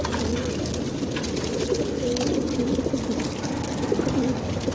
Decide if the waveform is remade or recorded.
recorded